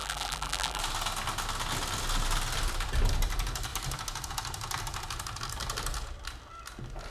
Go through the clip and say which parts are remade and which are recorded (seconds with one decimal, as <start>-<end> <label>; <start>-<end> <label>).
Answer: 0.0-0.8 remade; 0.8-7.1 recorded